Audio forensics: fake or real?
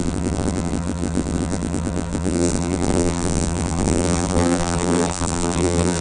fake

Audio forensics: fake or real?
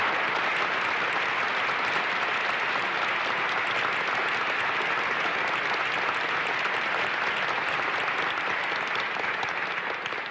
real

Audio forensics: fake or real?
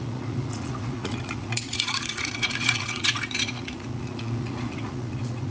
fake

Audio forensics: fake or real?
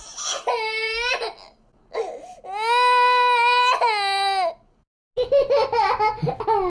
real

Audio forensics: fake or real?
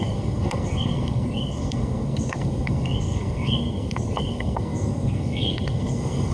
fake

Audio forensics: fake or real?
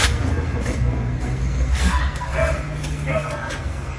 fake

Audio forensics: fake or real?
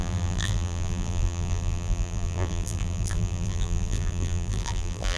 fake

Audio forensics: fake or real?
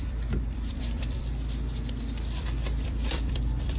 fake